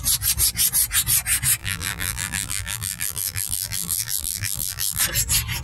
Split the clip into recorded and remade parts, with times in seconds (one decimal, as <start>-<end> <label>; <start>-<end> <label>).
0.0-1.6 recorded; 1.6-5.0 remade; 5.0-5.6 recorded